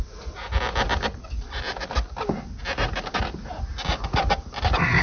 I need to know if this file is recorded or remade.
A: recorded